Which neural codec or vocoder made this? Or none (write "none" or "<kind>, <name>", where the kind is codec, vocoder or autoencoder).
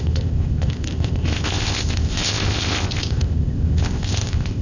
codec, ZipCodec